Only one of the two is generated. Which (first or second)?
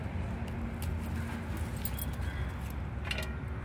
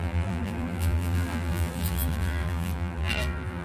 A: second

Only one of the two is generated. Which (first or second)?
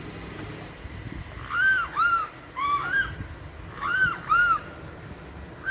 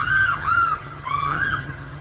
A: second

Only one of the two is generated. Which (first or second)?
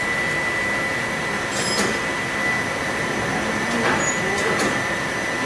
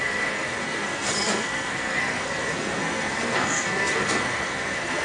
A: second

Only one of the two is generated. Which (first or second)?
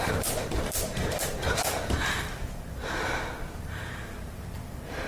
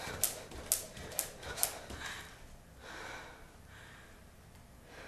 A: first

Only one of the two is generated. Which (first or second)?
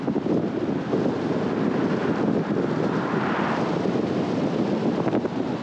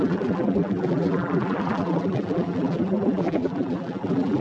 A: second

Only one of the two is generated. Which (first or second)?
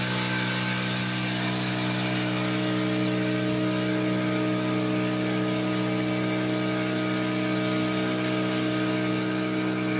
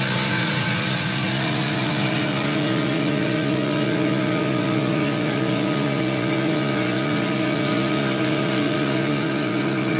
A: second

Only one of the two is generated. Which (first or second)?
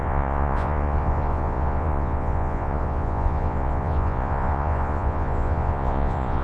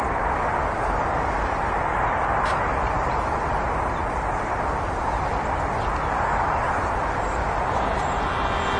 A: first